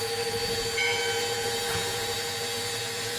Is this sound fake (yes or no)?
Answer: yes